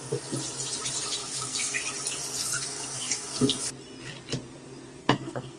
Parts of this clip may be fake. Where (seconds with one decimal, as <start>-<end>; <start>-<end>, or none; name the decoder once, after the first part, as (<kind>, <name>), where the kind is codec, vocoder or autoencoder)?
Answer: 1.2-1.8 (codec, SNAC); 2.4-3.6; 5.0-5.6